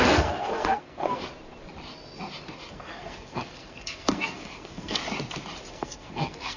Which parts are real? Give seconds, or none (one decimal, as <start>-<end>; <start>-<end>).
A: 1.2-2.7; 5.0-5.7